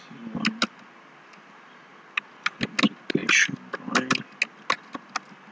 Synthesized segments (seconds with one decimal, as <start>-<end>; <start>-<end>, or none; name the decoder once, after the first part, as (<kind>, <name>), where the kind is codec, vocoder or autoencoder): none